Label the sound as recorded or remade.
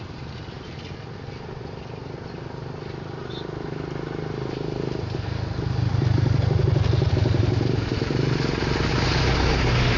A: recorded